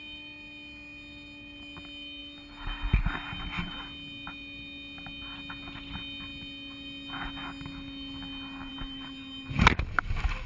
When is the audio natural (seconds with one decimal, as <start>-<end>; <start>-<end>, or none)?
0.0-10.5